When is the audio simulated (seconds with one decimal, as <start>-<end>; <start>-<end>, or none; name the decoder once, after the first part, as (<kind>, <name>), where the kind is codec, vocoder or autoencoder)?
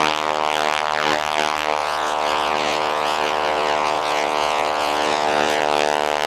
1.8-5.6 (vocoder, Vocos)